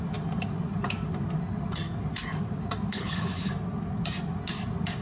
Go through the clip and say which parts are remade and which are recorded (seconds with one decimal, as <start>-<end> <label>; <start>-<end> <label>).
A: 0.0-2.9 recorded; 2.9-3.5 remade; 3.5-5.0 recorded